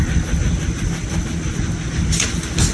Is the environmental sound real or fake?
real